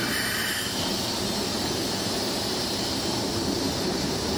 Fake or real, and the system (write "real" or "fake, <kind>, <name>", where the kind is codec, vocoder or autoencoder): fake, vocoder, BigVGAN v2